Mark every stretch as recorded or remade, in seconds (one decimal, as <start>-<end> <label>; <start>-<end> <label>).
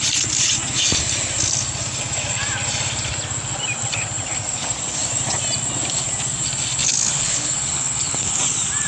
0.0-6.8 recorded; 6.8-8.4 remade; 8.4-8.9 recorded